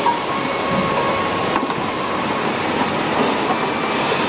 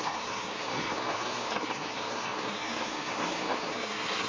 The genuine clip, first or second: first